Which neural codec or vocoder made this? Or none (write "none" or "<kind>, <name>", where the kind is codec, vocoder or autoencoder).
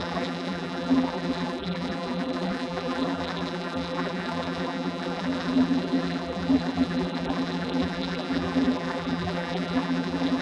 vocoder, BigVGAN v2